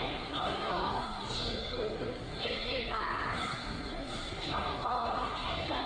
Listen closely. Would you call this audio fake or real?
fake